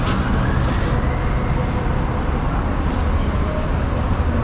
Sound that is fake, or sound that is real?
real